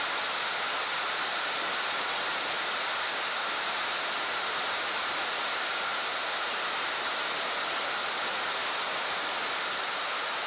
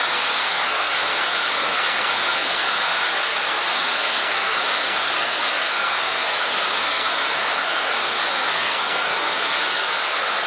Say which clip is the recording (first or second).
first